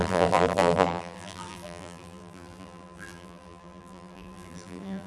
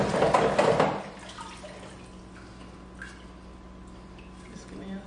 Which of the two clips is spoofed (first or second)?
first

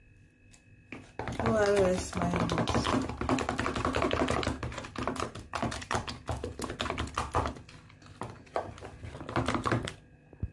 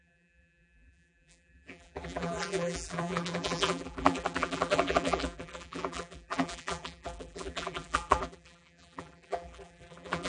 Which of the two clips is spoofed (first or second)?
second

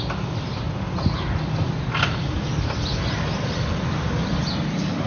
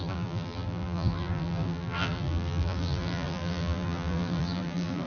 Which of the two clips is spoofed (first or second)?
second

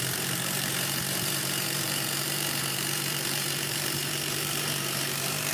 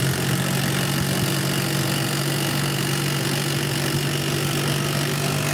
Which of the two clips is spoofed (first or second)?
first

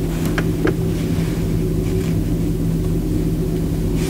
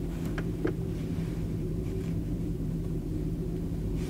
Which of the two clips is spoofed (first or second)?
second